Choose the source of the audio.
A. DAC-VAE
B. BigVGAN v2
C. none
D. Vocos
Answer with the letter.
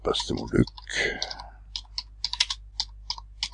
C